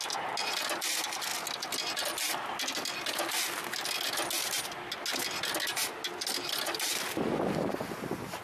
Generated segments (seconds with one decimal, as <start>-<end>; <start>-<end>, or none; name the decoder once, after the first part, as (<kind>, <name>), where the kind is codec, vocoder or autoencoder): none